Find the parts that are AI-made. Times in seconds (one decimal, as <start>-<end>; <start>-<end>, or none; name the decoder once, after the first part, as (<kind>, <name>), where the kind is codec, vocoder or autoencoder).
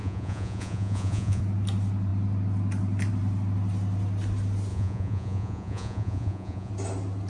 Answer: 0.0-1.4 (vocoder, Vocos); 4.7-6.7